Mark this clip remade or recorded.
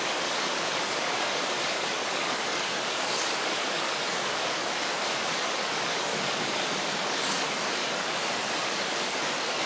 remade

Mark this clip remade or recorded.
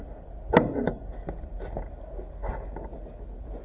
recorded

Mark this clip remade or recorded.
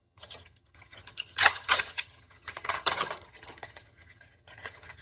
remade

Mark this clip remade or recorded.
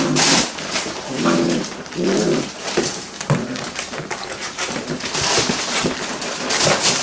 recorded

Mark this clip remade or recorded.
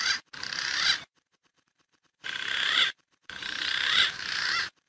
remade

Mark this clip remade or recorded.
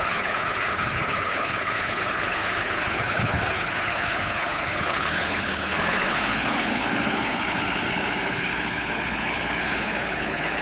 remade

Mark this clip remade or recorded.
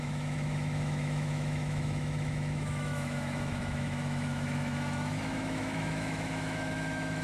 remade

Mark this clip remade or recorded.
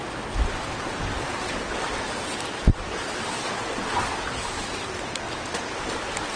recorded